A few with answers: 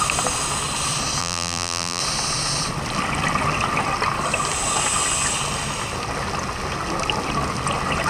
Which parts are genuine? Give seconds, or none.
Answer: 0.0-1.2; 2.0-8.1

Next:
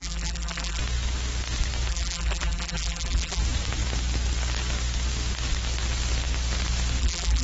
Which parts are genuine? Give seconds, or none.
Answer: 0.8-1.9; 3.4-7.0